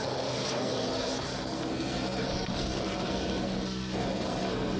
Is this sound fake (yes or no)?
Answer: yes